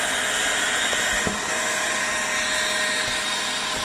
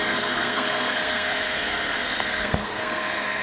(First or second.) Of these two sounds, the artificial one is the second